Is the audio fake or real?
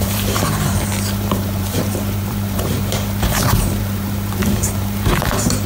fake